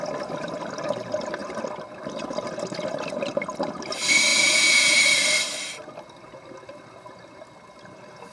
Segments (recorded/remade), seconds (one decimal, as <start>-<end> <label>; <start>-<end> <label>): 0.0-4.3 recorded; 4.3-5.0 remade; 5.0-8.3 recorded